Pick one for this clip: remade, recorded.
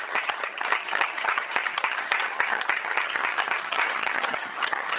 remade